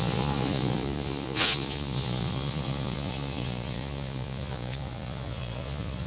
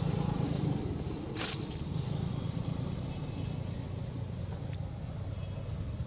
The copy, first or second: first